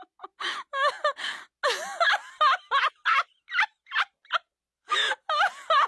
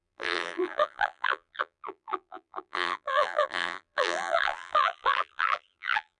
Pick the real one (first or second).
first